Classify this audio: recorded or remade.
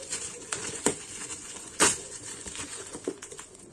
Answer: remade